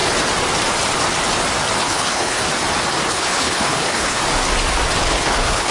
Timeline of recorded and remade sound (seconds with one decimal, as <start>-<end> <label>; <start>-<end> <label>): 0.0-1.8 recorded; 1.8-2.4 remade; 2.4-3.1 recorded; 3.1-4.2 remade; 4.2-5.0 recorded; 5.0-5.7 remade